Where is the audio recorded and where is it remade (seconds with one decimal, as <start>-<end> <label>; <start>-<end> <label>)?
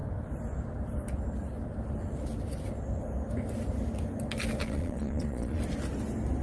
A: 0.0-4.6 recorded; 4.6-5.6 remade; 5.6-6.4 recorded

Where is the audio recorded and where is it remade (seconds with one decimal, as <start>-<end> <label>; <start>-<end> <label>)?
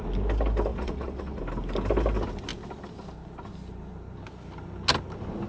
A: 0.0-0.7 recorded; 0.7-1.4 remade; 1.4-5.5 recorded